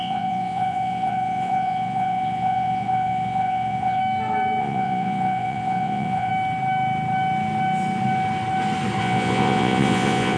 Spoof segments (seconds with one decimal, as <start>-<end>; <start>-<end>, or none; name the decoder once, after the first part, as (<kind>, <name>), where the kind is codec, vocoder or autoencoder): 0.0-4.0 (vocoder, Vocos); 4.6-6.3; 9.0-10.4